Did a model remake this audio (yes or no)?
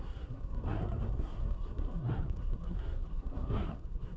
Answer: yes